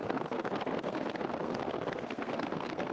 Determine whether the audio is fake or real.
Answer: fake